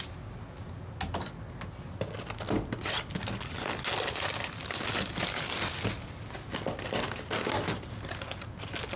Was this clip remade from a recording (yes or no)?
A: no